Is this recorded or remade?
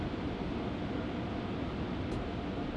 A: recorded